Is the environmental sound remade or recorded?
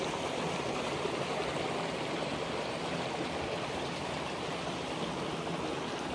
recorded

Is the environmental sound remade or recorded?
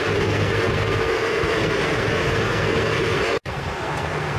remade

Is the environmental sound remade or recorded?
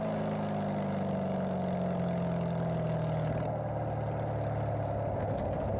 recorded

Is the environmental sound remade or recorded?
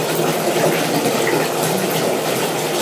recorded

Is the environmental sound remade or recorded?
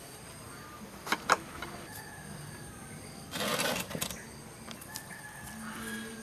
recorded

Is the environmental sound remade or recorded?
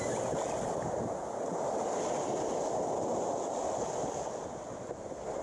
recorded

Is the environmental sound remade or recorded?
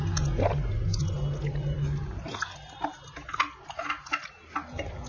recorded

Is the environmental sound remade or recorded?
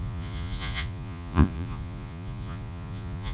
remade